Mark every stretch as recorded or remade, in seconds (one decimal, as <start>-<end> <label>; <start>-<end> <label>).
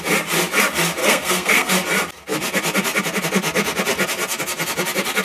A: 0.0-1.0 recorded; 1.0-1.7 remade; 1.7-5.2 recorded